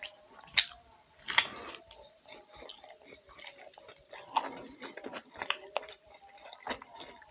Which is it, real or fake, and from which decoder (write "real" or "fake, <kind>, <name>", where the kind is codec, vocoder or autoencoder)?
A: real